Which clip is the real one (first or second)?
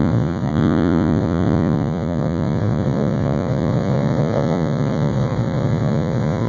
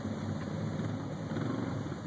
second